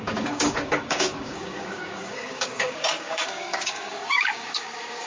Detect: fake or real fake